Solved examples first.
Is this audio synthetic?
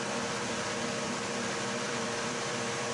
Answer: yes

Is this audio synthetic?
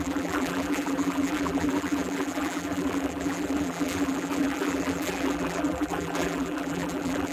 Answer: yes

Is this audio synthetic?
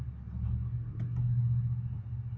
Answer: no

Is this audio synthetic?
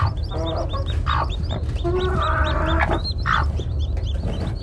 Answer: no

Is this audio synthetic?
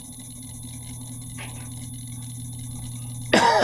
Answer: no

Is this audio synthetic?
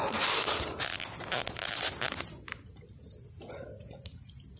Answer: no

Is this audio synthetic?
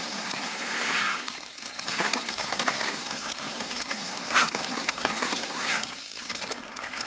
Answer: yes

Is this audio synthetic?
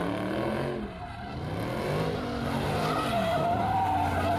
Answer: no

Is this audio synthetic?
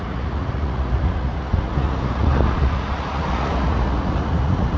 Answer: yes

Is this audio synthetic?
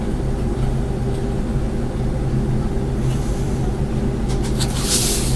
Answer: no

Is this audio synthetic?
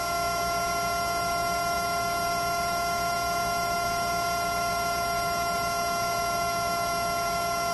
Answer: no